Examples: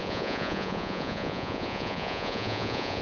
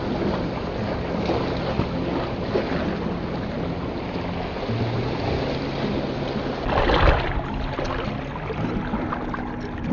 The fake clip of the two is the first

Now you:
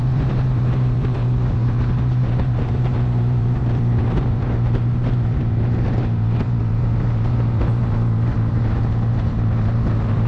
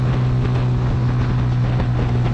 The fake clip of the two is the first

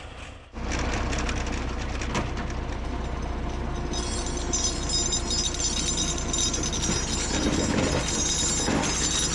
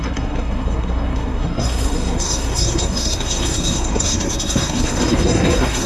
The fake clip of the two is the second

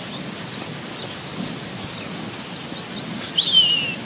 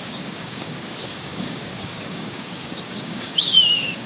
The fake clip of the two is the second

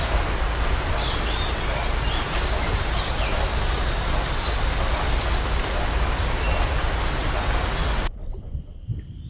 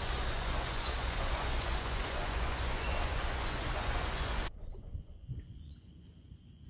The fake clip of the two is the second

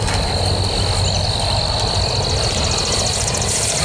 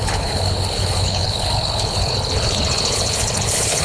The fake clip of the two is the second